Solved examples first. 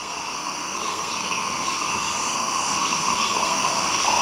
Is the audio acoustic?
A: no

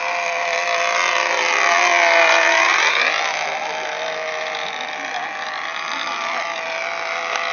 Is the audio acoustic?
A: yes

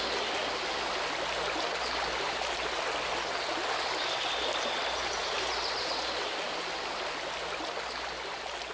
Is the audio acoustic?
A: yes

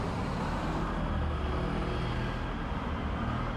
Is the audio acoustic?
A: yes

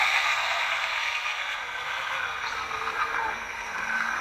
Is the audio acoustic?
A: no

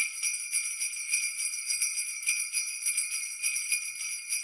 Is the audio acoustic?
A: yes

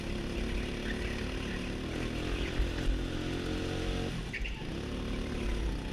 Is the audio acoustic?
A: yes